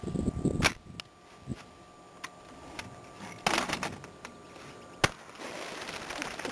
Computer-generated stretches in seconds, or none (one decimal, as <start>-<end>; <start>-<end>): none